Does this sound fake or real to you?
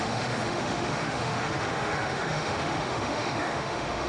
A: fake